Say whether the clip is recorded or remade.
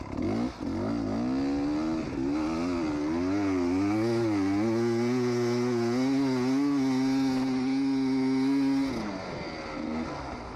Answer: recorded